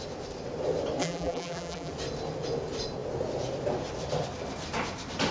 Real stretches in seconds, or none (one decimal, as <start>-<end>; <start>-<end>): 0.0-1.0; 1.9-5.3